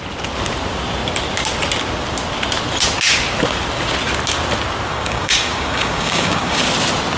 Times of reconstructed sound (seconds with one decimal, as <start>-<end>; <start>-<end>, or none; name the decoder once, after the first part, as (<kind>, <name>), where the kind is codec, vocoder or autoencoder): 4.9-6.6 (codec, DAC)